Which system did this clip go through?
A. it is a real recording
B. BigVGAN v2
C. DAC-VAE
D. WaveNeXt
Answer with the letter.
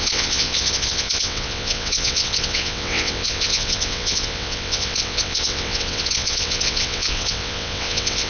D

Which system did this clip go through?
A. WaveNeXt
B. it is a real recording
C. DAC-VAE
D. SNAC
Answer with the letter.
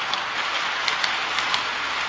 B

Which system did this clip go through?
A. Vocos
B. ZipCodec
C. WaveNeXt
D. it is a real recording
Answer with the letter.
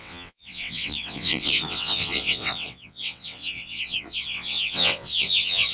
C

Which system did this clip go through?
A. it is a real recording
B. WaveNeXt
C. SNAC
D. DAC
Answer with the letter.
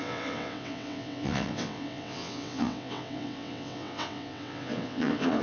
B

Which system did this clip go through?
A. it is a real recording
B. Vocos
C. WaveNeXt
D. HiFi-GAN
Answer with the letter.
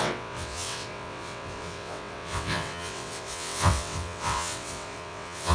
C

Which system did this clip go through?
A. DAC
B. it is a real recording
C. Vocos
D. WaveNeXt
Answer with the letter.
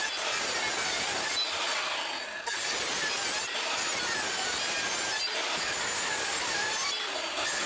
B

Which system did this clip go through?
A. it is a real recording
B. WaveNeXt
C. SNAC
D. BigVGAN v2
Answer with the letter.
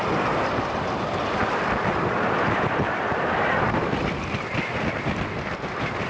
A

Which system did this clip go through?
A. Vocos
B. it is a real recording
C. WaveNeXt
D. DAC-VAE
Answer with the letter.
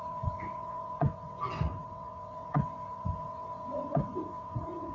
C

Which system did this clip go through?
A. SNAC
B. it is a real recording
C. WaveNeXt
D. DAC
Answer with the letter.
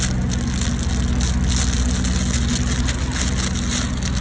B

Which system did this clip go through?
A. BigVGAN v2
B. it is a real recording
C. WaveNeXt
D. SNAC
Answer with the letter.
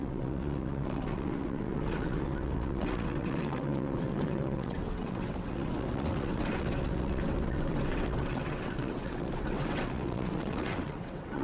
C